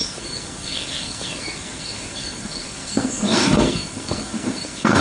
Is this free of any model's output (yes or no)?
no